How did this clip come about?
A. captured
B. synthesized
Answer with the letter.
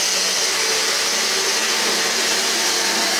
A